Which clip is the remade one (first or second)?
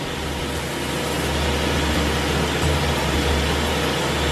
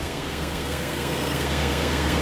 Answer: second